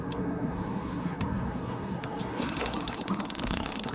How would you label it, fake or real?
fake